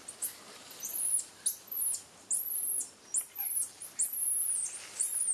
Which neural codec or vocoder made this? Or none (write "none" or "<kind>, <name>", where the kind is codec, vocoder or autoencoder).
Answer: none